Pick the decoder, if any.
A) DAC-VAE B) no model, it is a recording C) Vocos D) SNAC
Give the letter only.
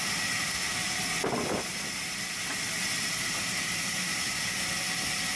B